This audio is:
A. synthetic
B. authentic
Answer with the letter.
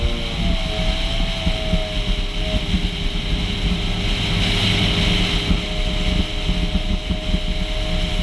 B